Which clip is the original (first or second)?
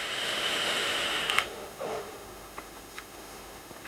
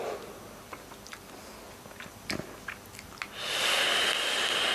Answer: second